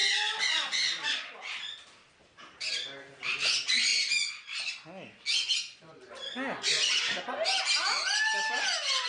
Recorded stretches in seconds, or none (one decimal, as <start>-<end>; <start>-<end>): 0.0-9.1